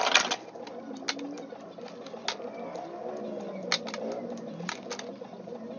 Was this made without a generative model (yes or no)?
yes